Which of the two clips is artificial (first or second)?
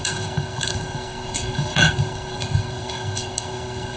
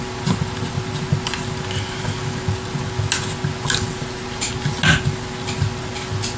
first